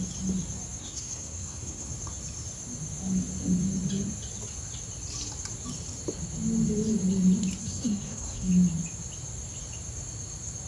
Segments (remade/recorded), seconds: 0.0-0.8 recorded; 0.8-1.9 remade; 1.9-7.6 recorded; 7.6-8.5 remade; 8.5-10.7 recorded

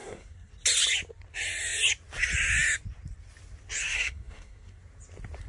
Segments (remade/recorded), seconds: 0.0-0.5 remade; 0.5-3.8 recorded; 3.8-4.8 remade; 4.8-5.5 recorded

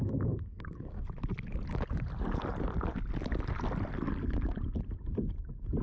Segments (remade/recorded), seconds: 0.0-5.8 recorded

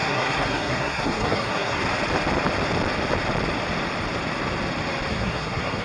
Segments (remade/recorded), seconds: 0.0-1.8 remade; 1.8-5.1 recorded; 5.1-5.8 remade